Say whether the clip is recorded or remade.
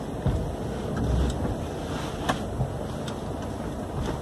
recorded